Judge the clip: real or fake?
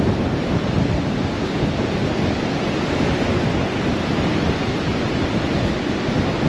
real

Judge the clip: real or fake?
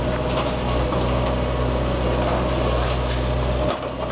real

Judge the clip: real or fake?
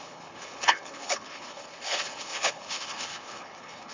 fake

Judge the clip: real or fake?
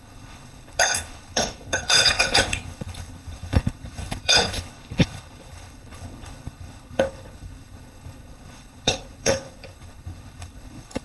fake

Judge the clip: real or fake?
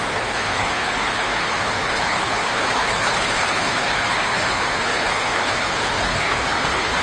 fake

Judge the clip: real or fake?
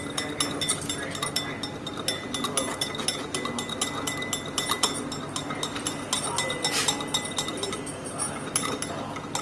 real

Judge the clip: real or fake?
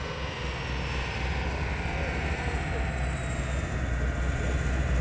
real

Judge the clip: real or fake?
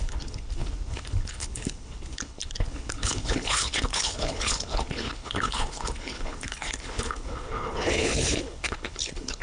fake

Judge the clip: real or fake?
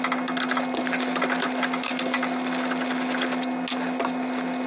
real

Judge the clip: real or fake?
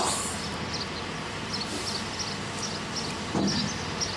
real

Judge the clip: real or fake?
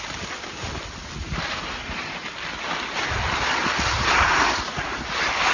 real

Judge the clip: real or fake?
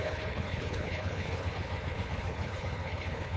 fake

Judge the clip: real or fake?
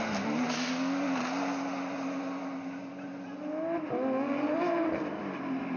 real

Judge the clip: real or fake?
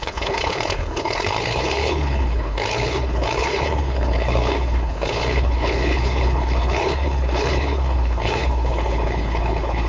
fake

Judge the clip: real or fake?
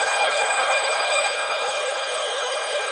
fake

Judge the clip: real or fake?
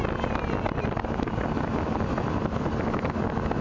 real